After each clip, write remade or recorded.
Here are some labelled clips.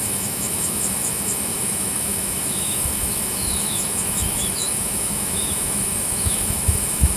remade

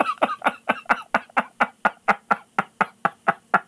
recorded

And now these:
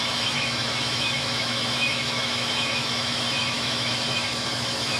remade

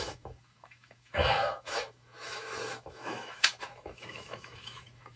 remade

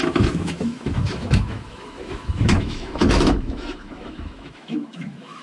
remade